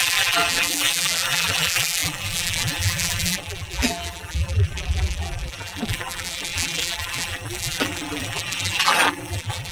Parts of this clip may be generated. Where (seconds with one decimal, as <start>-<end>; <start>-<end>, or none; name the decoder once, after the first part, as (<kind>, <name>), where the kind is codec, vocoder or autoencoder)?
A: 0.0-9.7 (vocoder, BigVGAN v2)